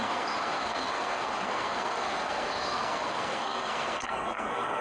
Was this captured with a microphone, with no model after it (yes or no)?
no